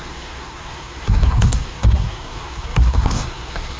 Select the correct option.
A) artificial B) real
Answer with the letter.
A